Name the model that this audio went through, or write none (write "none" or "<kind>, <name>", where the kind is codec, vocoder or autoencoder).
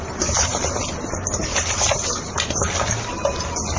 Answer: none